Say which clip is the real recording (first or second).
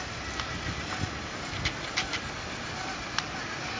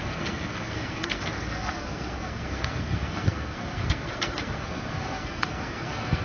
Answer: first